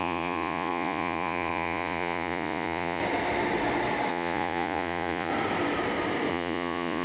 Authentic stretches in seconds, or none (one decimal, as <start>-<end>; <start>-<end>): 3.0-4.1; 5.3-6.3